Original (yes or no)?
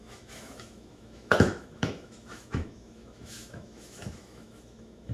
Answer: no